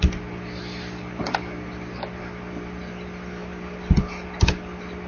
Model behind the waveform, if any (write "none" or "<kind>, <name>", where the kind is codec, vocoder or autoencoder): none